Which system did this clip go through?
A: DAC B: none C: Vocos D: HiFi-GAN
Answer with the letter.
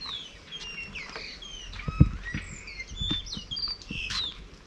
B